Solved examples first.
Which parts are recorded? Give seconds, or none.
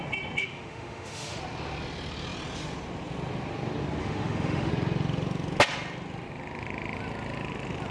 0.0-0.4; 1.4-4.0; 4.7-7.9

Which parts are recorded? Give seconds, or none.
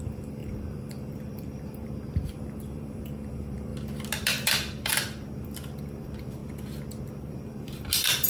3.7-4.5; 6.4-7.0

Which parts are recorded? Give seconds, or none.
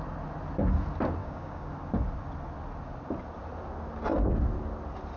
0.0-1.2; 1.7-5.2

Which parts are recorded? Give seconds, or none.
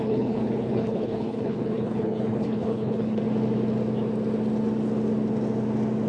3.2-6.1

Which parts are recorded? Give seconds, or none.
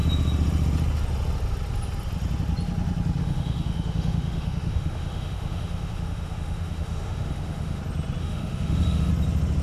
0.0-3.2; 7.8-8.2; 9.1-9.6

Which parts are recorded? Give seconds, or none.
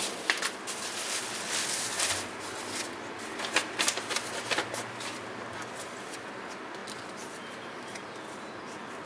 0.0-9.1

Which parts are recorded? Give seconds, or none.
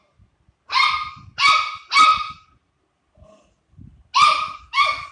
0.0-2.1; 2.8-5.1